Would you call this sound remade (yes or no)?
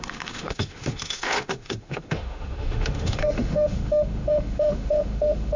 yes